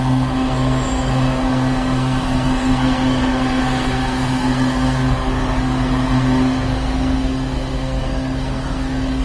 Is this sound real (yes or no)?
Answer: no